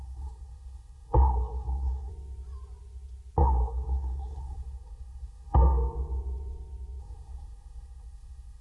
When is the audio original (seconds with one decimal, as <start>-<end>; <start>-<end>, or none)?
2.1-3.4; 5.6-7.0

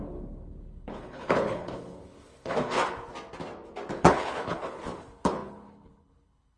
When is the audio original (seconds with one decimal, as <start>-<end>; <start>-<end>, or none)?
2.8-3.9

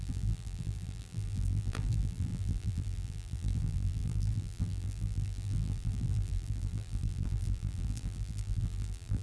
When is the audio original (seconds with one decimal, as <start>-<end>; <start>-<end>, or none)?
none